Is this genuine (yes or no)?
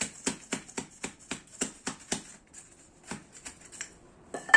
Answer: yes